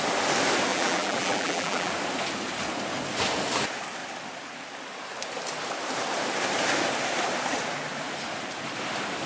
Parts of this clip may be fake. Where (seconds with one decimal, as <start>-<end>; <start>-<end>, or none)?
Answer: 0.7-1.9